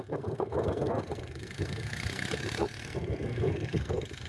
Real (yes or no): no